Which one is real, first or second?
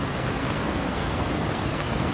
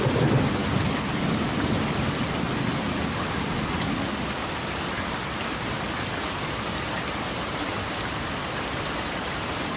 second